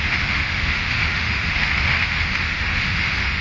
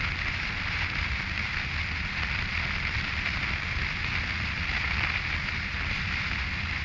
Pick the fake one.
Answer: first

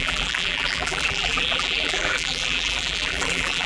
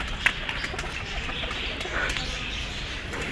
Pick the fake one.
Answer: first